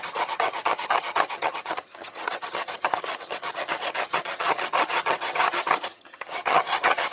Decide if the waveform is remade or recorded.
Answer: remade